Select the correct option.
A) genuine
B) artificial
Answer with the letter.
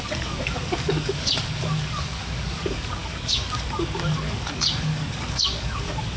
B